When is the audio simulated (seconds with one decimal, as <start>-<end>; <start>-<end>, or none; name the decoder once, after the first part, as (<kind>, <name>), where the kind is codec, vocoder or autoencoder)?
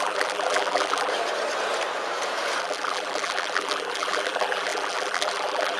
0.0-1.1 (vocoder, BigVGAN v2); 2.6-5.8